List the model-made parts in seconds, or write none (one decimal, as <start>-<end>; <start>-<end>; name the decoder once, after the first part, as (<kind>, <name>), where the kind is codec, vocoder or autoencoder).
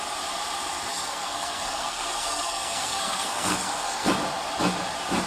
0.9-4.1 (codec, SNAC)